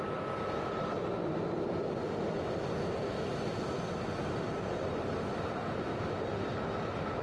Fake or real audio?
real